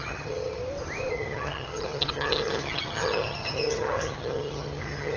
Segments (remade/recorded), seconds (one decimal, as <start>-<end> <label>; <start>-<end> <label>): 0.0-0.6 remade; 0.6-1.1 recorded; 1.1-5.2 remade